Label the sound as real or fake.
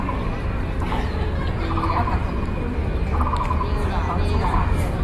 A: real